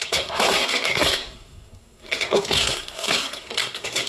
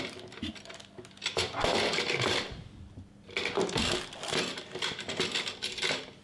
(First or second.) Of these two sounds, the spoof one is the first